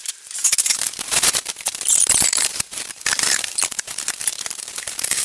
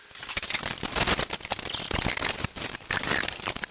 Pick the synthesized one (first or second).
first